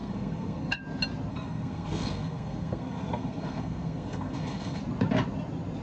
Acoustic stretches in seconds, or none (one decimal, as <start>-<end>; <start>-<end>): 0.8-1.3; 4.8-5.8